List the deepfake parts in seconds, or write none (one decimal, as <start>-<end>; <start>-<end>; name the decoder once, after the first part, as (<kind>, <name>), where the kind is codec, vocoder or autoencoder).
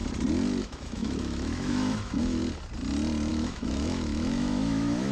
0.6-2.4 (autoencoder, DAC-VAE); 3.3-5.1